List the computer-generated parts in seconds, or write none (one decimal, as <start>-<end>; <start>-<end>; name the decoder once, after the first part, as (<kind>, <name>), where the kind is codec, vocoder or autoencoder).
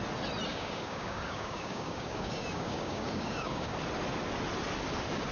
0.5-3.7 (codec, DAC)